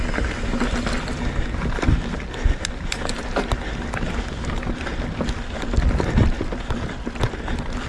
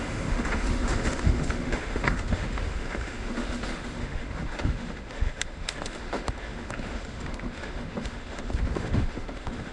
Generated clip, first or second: second